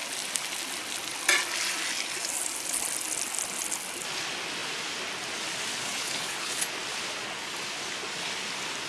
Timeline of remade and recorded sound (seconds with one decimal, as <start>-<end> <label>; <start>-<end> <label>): 0.0-5.8 recorded; 5.8-6.6 remade; 6.6-8.9 recorded